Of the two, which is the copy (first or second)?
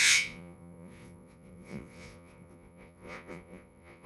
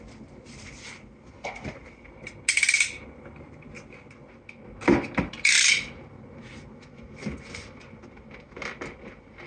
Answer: first